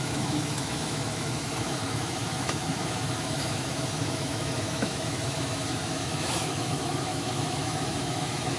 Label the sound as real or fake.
fake